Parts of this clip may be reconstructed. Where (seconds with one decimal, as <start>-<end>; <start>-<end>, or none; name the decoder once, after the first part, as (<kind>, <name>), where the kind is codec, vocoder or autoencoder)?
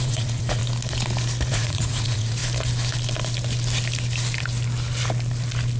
0.0-0.6 (vocoder, Vocos); 1.5-2.4